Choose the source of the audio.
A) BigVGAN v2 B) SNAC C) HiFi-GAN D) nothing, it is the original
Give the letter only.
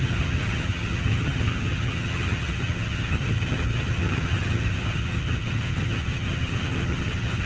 C